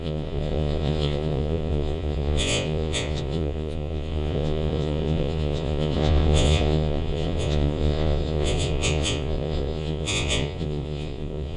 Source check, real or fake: fake